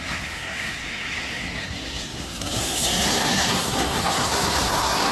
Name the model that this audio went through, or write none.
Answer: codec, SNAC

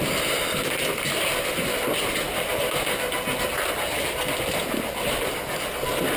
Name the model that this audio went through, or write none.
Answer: none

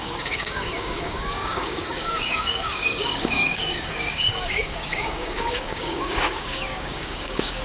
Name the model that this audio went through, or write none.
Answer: codec, DAC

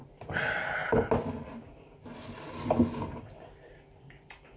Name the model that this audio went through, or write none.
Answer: none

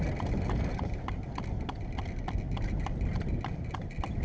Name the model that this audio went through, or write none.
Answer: none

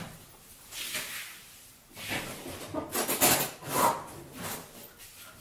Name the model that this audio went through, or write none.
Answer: none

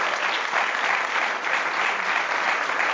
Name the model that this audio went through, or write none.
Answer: none